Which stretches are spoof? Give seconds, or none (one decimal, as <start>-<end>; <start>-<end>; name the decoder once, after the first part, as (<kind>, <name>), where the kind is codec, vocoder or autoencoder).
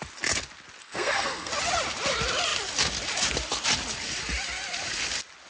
0.8-1.5 (codec, SNAC)